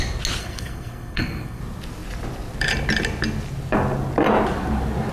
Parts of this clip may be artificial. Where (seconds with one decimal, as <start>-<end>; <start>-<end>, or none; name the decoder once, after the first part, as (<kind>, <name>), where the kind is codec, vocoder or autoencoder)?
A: 0.4-1.6 (codec, SNAC)

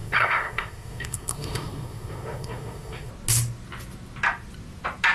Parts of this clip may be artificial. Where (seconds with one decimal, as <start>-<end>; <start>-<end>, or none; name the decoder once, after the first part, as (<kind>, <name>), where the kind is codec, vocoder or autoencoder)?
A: 0.0-3.1 (codec, SNAC)

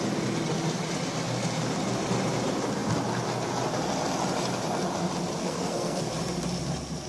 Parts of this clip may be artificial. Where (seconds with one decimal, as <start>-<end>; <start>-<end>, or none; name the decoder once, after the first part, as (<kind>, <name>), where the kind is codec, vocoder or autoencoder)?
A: 5.4-6.0 (codec, SNAC)

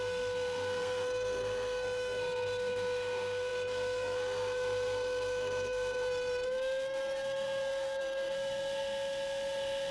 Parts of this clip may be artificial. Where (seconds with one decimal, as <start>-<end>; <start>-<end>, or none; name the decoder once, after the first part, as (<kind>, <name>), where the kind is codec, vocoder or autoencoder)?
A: 0.0-9.9 (codec, SNAC)

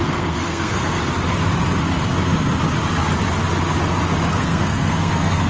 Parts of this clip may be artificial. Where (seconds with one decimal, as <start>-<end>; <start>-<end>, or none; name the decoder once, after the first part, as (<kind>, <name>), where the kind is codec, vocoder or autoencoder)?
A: 0.0-1.0 (codec, SNAC); 4.3-5.5